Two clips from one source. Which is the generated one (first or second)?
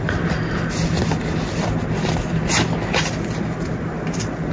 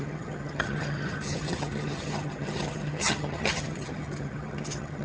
second